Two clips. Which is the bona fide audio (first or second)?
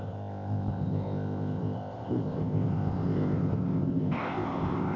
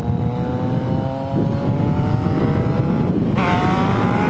second